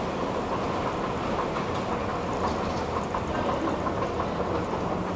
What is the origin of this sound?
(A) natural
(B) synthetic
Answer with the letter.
A